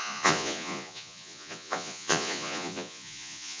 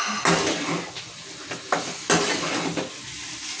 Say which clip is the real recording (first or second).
second